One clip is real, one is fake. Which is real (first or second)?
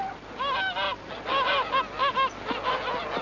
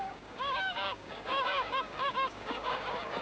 first